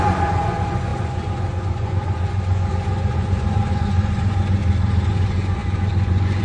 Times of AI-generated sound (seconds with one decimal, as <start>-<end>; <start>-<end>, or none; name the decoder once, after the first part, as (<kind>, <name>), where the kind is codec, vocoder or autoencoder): 0.0-4.6 (vocoder, Vocos); 5.1-6.4